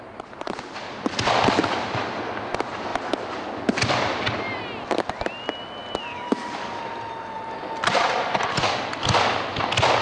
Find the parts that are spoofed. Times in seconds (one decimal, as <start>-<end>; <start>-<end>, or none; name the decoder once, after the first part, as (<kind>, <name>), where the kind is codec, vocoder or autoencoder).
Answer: 6.1-6.8 (codec, DAC)